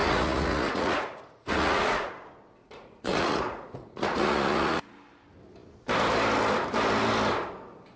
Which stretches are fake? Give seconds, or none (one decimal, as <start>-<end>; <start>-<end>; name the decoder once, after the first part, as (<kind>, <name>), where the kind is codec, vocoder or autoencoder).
0.0-2.1 (vocoder, Vocos); 2.6-4.8